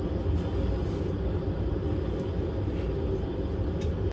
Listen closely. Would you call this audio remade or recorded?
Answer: recorded